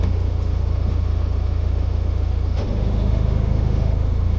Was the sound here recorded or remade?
remade